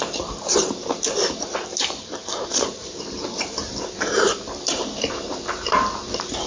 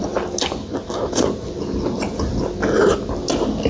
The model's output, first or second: first